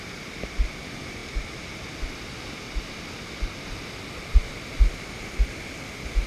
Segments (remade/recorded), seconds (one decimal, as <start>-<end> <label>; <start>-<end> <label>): 0.0-6.3 recorded